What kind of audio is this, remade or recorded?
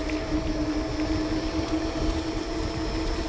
recorded